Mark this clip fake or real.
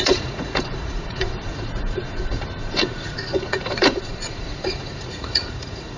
fake